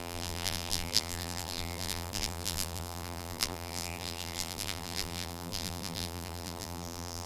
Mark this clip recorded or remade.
remade